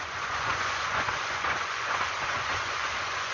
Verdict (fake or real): fake